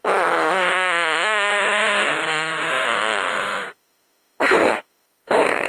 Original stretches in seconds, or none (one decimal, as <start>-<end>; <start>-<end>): none